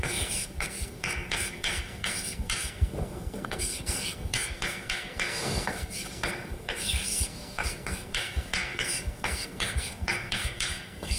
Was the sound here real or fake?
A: fake